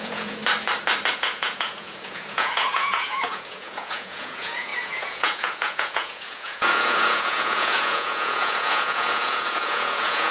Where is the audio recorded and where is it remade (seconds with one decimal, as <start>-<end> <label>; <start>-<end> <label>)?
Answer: 0.0-0.4 remade; 0.4-1.1 recorded; 1.1-10.3 remade